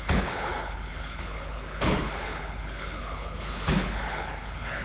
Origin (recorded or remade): remade